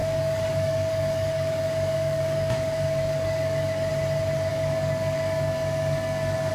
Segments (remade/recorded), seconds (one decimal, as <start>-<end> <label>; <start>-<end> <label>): 0.0-3.9 remade; 3.9-4.5 recorded; 4.5-6.5 remade